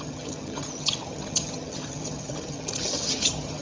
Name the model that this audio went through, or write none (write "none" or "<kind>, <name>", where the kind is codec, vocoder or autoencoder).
vocoder, HiFi-GAN